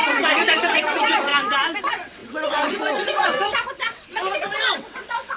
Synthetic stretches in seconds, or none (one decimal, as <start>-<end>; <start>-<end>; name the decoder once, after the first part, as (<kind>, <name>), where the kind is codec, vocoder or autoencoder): 0.0-1.3 (vocoder, WaveNeXt); 1.8-5.4